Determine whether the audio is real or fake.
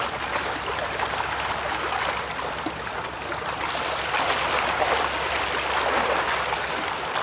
real